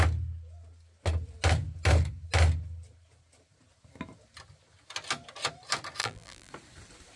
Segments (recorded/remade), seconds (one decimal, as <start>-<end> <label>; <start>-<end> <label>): 0.0-6.0 recorded; 6.0-6.5 remade; 6.5-7.2 recorded